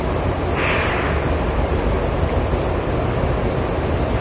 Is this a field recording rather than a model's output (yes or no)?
yes